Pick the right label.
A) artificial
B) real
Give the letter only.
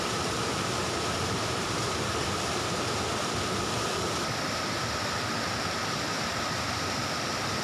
A